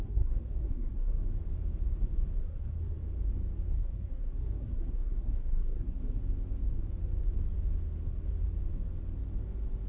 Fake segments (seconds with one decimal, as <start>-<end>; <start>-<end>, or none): 0.0-1.2; 2.4-3.0; 3.7-6.2